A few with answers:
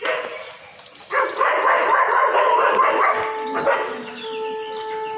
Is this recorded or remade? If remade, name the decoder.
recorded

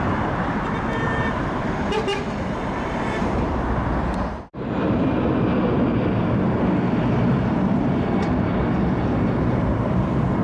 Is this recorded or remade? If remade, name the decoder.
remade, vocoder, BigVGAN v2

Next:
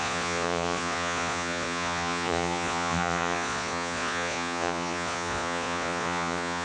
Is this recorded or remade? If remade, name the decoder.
remade, vocoder, Vocos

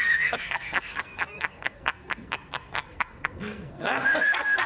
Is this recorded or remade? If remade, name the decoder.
remade, codec, SNAC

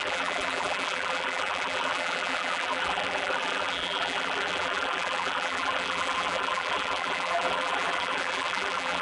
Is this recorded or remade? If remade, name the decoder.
remade, vocoder, BigVGAN v2